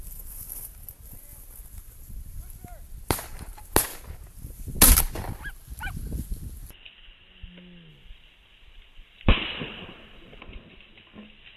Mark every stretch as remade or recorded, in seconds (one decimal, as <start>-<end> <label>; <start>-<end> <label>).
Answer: 0.0-7.9 recorded; 7.9-10.4 remade; 10.4-11.6 recorded